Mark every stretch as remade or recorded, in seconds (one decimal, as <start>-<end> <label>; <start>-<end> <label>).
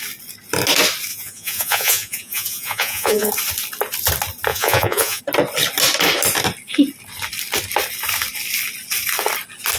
0.0-1.1 recorded; 1.1-3.3 remade; 3.3-4.5 recorded; 4.5-5.2 remade; 5.2-9.8 recorded